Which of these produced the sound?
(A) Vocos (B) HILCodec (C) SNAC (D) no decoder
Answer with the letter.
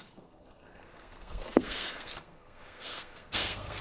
C